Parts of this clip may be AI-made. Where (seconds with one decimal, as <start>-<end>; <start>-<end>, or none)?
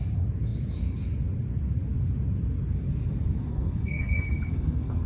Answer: 3.5-5.1